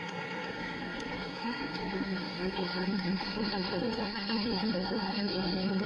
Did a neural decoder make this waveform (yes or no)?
yes